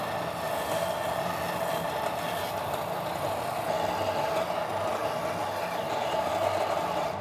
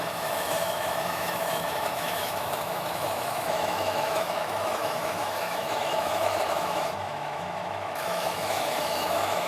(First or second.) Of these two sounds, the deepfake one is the second